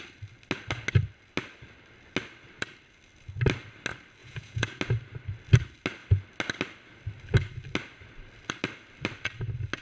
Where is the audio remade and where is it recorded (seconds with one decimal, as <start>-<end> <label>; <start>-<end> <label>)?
0.0-4.2 recorded; 4.2-4.8 remade; 4.8-9.8 recorded